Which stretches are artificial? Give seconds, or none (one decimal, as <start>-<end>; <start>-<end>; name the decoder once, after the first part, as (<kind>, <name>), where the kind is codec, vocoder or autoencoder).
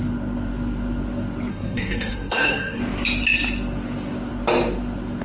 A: 1.5-2.8 (codec, SNAC)